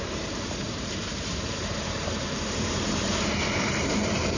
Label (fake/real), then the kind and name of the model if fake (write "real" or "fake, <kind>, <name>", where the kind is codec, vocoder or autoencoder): fake, vocoder, BigVGAN v2